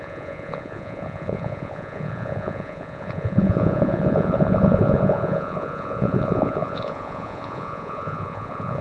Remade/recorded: remade